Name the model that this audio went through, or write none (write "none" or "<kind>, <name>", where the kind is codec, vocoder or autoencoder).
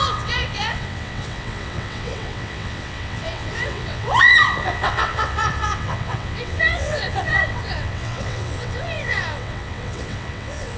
vocoder, WaveNeXt